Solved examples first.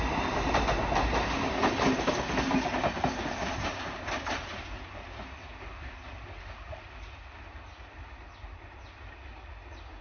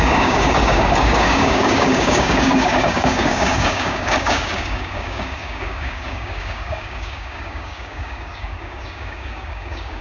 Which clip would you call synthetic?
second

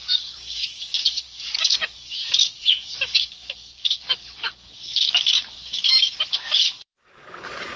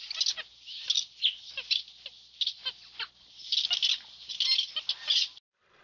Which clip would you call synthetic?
first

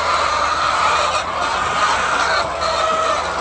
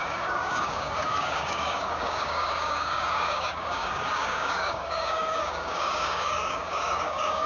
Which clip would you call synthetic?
second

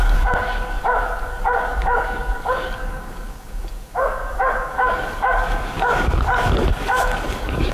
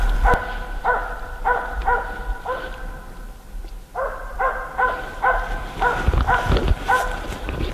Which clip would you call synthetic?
first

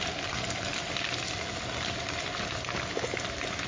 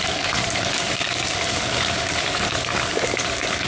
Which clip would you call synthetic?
second